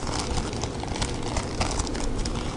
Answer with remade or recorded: recorded